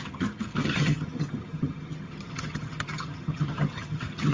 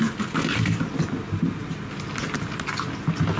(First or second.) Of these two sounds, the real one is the second